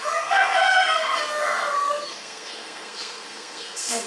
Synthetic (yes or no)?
yes